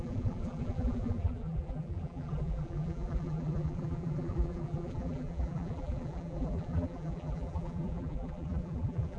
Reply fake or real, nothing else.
fake